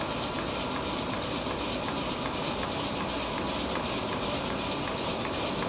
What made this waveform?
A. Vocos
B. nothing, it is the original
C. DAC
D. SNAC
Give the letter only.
B